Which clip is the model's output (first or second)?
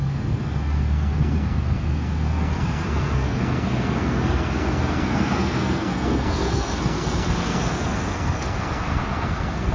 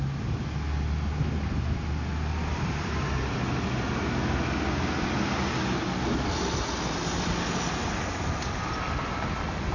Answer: first